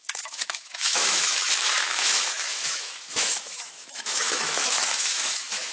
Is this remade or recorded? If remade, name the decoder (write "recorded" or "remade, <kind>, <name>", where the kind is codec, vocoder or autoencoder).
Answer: remade, autoencoder, DAC-VAE